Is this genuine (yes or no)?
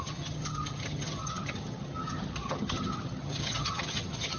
no